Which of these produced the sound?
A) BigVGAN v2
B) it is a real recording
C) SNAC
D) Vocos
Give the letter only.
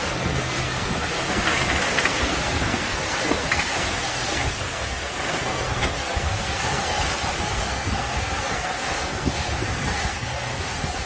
C